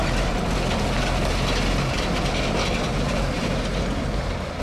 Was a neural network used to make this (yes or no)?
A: no